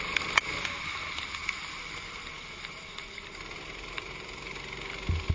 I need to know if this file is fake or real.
real